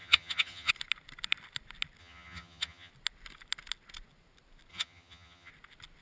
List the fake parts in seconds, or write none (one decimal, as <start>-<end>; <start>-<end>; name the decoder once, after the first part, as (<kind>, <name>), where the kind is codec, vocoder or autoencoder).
0.0-0.7 (vocoder, HiFi-GAN); 2.0-2.9; 4.7-5.5